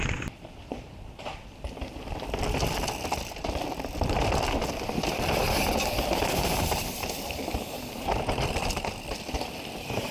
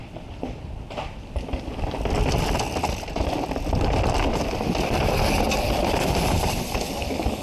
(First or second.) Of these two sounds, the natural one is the second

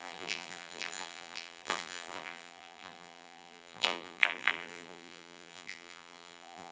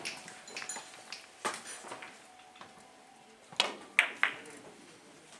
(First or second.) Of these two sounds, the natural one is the second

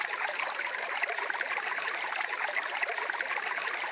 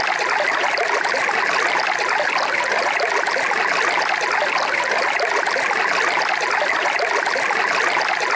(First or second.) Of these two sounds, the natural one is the second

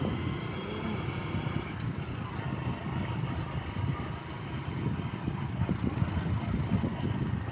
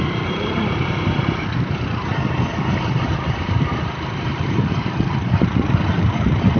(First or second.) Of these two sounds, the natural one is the first